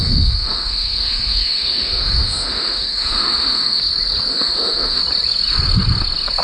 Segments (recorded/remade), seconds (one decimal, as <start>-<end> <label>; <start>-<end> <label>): 0.0-3.8 remade; 3.8-4.3 recorded; 4.3-5.0 remade; 5.0-6.4 recorded